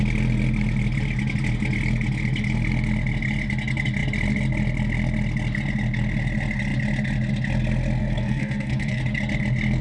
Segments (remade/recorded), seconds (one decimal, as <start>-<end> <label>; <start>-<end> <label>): 0.0-8.0 recorded; 8.0-9.0 remade; 9.0-9.8 recorded